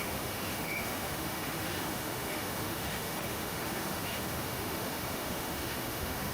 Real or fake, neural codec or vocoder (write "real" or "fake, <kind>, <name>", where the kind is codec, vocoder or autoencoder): fake, autoencoder, DAC-VAE